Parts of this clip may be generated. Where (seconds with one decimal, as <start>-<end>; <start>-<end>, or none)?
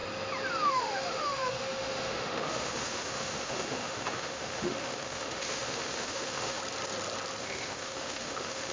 0.7-6.6; 7.4-8.7